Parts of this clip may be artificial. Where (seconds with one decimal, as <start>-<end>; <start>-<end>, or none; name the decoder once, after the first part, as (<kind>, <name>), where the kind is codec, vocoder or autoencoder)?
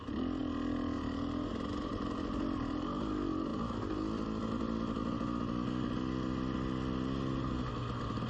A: none